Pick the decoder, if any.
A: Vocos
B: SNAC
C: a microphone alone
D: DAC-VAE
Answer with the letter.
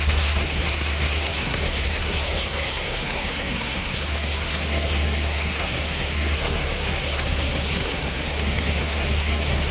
B